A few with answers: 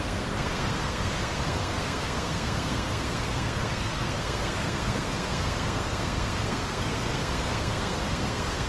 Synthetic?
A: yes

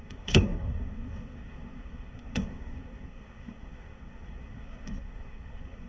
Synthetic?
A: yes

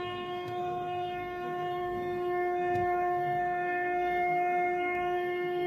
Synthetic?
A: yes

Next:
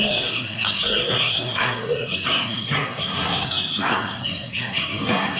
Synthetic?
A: yes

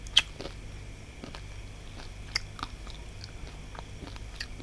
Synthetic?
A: no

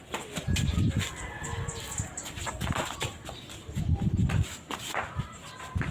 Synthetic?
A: no